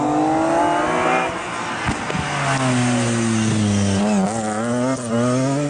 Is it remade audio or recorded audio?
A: recorded